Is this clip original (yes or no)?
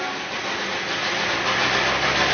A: yes